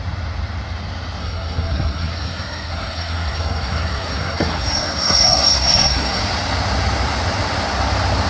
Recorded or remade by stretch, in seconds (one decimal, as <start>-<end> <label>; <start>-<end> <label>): 0.0-1.2 recorded; 1.2-6.2 remade; 6.2-8.3 recorded